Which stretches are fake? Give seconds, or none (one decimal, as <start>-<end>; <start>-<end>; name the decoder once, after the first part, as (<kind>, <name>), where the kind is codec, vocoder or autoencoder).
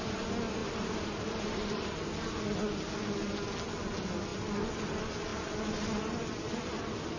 0.6-2.4 (vocoder, BigVGAN v2)